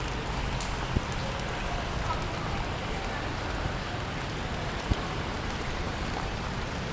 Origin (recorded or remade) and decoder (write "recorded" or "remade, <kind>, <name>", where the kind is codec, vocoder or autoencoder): recorded